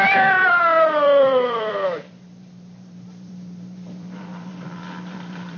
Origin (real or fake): fake